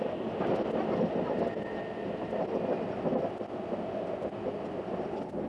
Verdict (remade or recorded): recorded